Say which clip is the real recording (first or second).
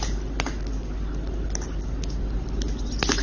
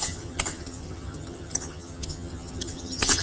first